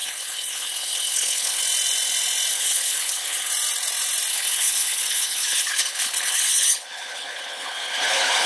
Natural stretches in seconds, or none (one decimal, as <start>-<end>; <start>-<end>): 1.6-2.5; 3.5-4.3